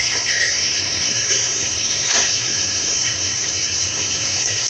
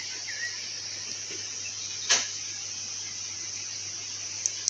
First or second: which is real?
second